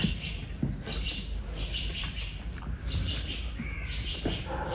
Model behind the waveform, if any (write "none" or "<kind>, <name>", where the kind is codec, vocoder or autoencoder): none